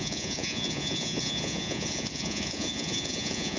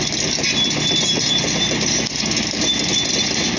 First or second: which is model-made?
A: first